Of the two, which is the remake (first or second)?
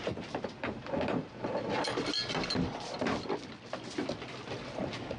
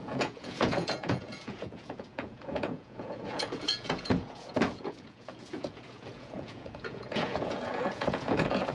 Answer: second